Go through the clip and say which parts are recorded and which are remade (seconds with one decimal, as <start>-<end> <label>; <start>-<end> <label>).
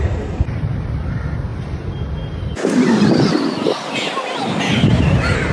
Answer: 0.0-1.5 remade; 1.5-4.8 recorded; 4.8-5.5 remade